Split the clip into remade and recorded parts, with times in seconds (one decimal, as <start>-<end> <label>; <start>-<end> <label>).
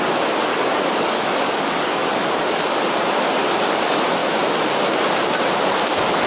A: 0.0-0.5 recorded; 0.5-2.7 remade; 2.7-6.3 recorded